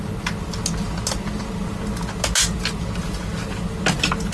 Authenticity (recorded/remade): recorded